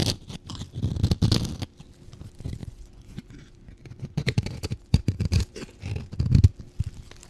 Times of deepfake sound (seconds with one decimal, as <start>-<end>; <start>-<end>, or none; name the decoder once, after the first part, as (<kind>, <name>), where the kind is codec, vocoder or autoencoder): 2.6-5.8 (vocoder, Vocos)